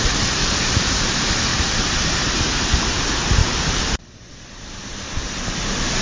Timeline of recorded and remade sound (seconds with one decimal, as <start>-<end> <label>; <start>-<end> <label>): 0.0-0.4 recorded; 0.4-1.0 remade; 1.0-1.5 recorded; 1.5-2.8 remade; 2.8-6.0 recorded